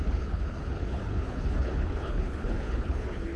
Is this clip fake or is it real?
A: fake